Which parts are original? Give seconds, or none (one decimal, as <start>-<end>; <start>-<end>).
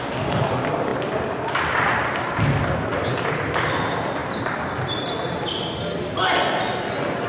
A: 0.0-7.3